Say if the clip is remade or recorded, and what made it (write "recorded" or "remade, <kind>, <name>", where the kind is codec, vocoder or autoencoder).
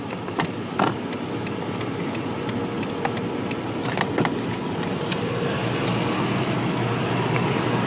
recorded